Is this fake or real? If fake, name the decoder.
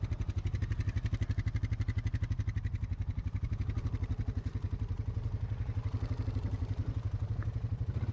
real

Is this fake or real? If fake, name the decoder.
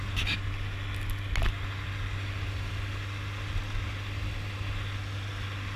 real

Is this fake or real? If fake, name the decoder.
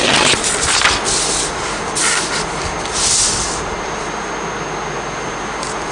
real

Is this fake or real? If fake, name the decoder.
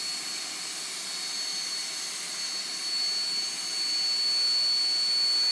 real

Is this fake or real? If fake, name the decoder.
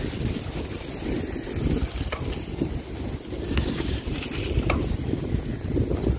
real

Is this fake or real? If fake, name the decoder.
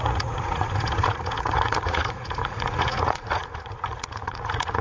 fake, vocoder, Vocos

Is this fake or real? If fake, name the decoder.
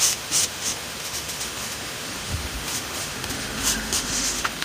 fake, autoencoder, DAC-VAE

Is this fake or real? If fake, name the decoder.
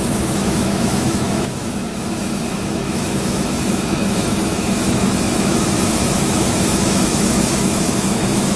fake, autoencoder, DAC-VAE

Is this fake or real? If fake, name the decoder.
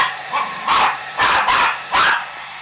fake, vocoder, BigVGAN v2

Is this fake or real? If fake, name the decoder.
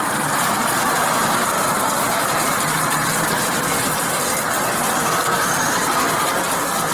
fake, vocoder, BigVGAN v2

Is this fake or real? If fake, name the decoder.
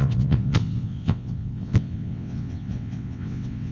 fake, vocoder, WaveNeXt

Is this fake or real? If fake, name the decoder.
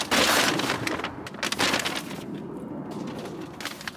real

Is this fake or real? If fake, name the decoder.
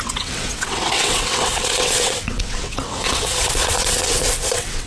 fake, vocoder, WaveNeXt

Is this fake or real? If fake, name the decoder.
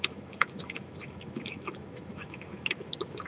fake, autoencoder, DAC-VAE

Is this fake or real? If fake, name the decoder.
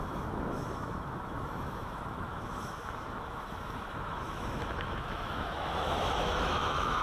fake, autoencoder, DAC-VAE